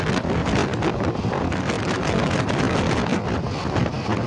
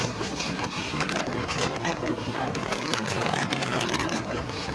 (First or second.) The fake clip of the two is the second